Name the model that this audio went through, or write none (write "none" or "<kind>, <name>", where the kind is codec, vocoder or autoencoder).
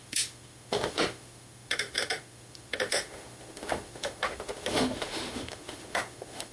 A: autoencoder, DAC-VAE